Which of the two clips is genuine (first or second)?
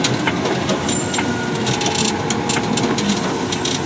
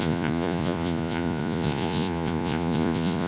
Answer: first